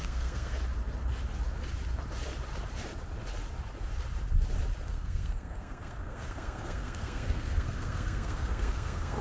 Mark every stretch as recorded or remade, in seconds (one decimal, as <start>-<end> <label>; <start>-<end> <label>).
0.0-0.6 remade; 0.6-4.9 recorded; 4.9-9.2 remade